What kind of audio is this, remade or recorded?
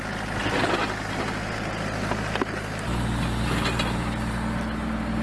recorded